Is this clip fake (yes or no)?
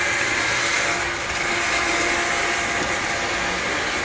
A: no